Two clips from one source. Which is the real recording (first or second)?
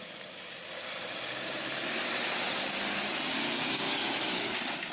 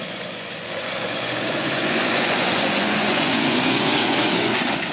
first